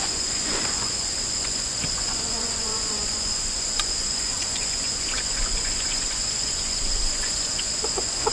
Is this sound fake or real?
fake